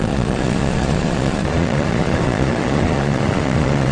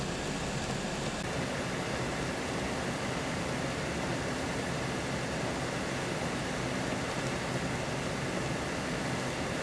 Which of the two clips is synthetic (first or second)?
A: first